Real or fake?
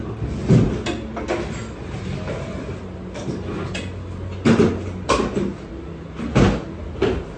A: real